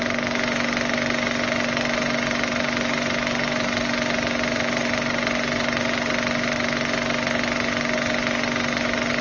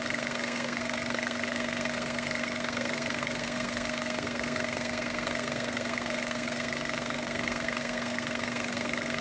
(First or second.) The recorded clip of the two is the first